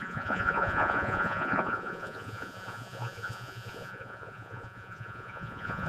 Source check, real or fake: fake